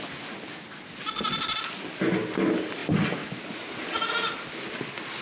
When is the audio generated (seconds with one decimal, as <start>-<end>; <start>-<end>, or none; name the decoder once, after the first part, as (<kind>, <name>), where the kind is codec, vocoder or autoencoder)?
none